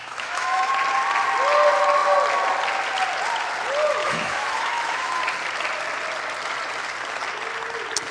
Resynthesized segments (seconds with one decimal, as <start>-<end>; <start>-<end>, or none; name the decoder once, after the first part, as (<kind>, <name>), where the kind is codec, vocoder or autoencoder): 0.0-0.7 (autoencoder, DAC-VAE); 4.0-5.2